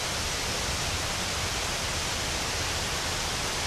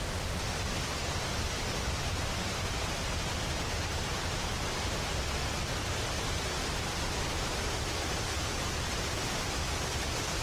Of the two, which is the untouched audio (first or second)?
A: first